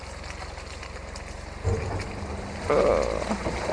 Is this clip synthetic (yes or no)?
no